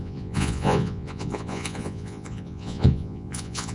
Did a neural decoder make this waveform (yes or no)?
yes